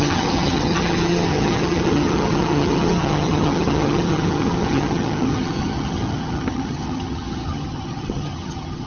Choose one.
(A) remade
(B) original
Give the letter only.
A